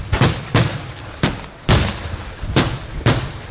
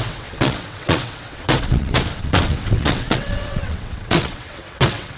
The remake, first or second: second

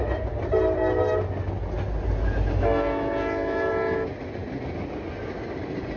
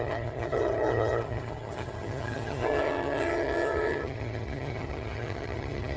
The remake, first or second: second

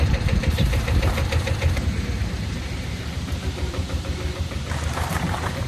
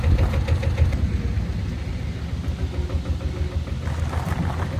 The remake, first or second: first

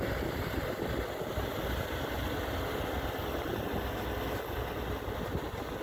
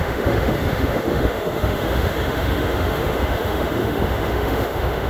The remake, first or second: second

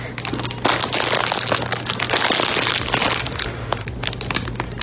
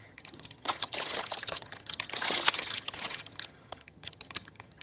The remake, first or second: second